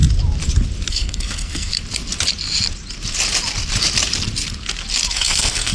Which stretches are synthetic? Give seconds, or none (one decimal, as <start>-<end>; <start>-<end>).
0.9-1.7; 5.1-5.7